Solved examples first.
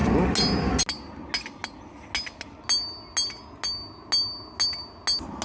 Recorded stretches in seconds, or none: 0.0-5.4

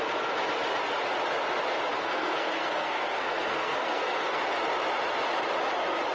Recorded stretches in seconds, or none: 0.0-1.9; 4.4-6.1

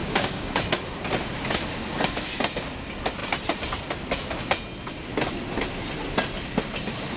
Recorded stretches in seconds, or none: 0.6-7.2

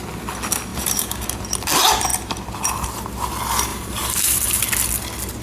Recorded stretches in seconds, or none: 0.0-0.7; 1.4-3.7; 4.6-5.4

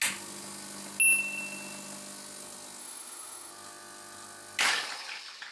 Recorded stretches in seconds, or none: 0.0-2.8; 3.5-5.5

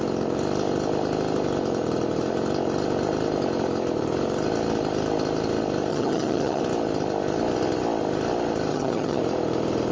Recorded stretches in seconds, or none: 0.0-5.9; 6.6-8.7; 9.2-9.9